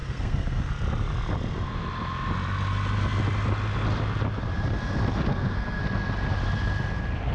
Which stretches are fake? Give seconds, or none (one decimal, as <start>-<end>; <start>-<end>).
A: 0.0-0.7; 5.3-5.8